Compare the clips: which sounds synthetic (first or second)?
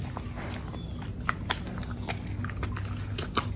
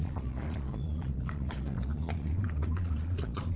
second